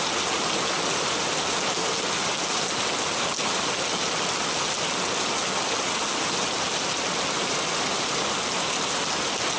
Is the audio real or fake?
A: real